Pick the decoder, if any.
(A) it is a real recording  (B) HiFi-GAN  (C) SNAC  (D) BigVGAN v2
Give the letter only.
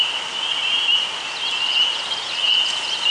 A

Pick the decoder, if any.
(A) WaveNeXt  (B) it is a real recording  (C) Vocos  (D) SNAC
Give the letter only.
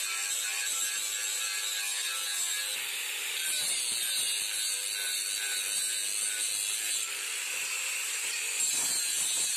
B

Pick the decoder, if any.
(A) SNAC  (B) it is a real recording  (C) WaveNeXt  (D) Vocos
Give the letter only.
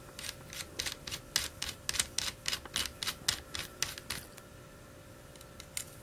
B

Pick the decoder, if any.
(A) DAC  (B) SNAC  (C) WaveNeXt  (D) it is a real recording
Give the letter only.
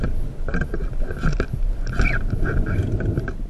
D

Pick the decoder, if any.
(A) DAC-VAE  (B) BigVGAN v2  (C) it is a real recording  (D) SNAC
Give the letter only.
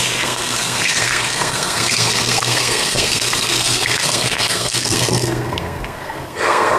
D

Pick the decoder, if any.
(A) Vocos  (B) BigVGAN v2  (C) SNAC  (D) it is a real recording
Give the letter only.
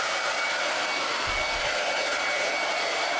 D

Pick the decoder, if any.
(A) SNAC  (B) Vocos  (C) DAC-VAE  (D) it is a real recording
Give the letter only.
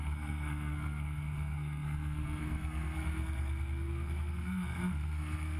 A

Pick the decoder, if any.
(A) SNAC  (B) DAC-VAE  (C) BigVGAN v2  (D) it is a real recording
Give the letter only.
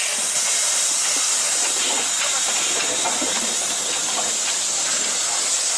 D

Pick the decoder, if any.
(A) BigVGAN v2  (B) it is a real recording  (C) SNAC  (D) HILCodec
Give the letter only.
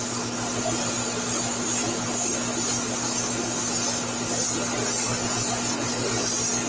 B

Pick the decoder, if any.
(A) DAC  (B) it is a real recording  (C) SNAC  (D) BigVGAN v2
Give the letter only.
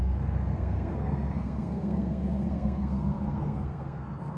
C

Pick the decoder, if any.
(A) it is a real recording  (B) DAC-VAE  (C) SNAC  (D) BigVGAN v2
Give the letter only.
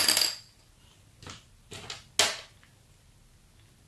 A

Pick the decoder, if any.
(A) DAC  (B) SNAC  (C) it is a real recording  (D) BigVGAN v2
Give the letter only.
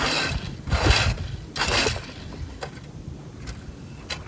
C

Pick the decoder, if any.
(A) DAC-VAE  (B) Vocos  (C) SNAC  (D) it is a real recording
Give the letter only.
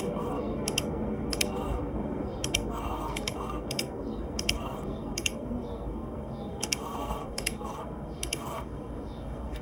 C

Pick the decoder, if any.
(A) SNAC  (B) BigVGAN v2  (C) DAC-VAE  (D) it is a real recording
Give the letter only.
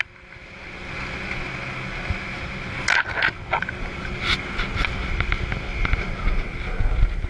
D